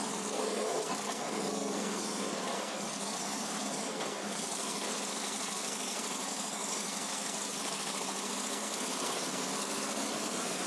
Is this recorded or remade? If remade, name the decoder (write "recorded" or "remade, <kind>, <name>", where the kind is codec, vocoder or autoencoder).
remade, codec, SNAC